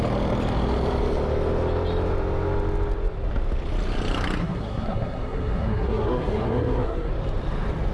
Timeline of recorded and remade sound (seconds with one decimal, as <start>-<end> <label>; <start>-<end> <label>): 0.0-4.4 recorded; 4.4-7.1 remade; 7.1-7.9 recorded